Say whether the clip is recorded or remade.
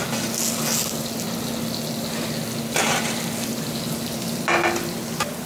recorded